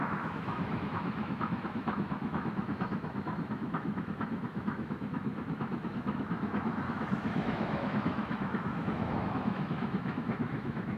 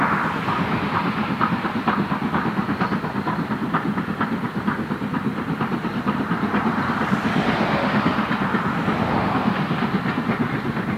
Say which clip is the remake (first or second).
first